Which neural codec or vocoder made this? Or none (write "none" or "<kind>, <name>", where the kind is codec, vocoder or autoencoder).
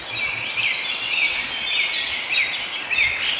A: none